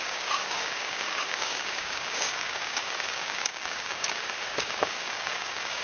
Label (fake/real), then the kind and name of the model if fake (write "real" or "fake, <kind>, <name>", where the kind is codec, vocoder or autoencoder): fake, codec, DAC